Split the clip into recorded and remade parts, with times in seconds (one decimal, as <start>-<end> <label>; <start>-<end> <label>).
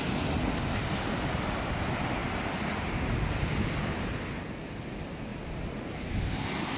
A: 0.0-6.8 recorded